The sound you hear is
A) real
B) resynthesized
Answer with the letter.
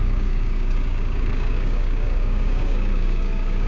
B